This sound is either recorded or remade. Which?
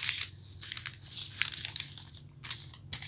recorded